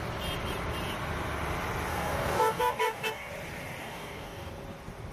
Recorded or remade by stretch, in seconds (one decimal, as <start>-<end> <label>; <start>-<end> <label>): 0.0-1.9 recorded; 1.9-3.3 remade; 3.3-3.8 recorded; 3.8-4.5 remade; 4.5-5.1 recorded